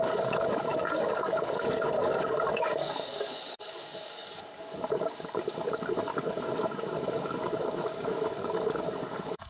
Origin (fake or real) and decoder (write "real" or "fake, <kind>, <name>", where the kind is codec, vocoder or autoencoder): fake, codec, DAC